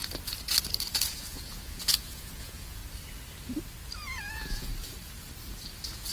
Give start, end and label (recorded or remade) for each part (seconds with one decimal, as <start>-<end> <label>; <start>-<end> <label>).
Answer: 0.0-1.1 recorded; 1.1-2.8 remade; 2.8-4.3 recorded; 4.3-4.7 remade; 4.7-6.1 recorded